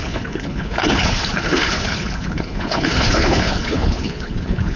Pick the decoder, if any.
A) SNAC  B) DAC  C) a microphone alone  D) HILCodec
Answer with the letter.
D